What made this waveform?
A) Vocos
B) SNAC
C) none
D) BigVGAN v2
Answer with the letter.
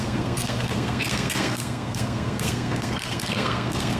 B